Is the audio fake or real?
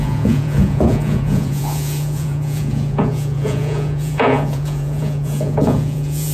fake